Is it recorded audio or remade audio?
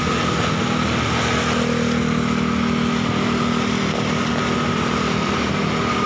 recorded